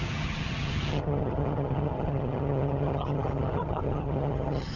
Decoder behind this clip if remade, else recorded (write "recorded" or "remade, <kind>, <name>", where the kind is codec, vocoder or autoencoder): remade, vocoder, HiFi-GAN